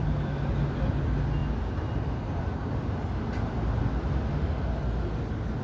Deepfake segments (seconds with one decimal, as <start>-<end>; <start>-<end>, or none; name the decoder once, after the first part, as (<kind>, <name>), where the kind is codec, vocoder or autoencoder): none